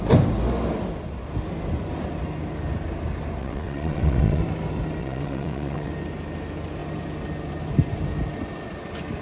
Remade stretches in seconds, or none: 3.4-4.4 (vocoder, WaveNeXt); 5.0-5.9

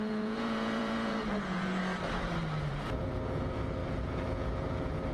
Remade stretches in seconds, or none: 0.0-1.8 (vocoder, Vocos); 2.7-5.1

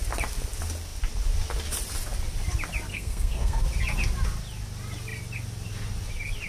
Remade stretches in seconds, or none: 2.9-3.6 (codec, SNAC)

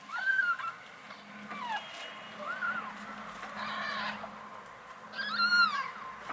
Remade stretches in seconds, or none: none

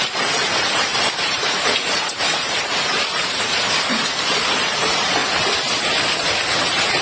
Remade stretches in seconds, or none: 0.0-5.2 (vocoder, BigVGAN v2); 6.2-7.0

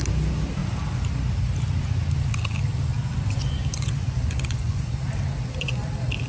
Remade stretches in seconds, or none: 3.7-4.9 (vocoder, Vocos)

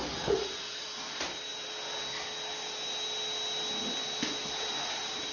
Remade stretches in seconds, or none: 0.8-1.5 (vocoder, BigVGAN v2); 4.7-5.3